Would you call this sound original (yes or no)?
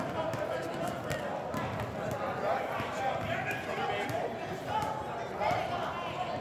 yes